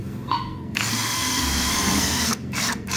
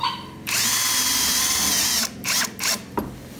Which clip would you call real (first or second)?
second